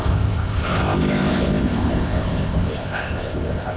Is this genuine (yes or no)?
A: no